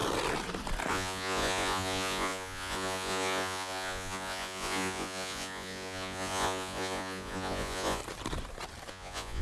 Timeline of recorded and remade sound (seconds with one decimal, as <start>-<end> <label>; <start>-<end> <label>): 0.0-0.9 recorded; 0.9-8.0 remade; 8.0-8.9 recorded; 8.9-9.4 remade